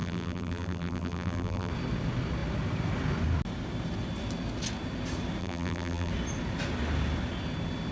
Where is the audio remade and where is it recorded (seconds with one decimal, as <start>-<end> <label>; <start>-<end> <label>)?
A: 0.0-1.7 remade; 1.7-5.4 recorded; 5.4-6.1 remade; 6.1-7.9 recorded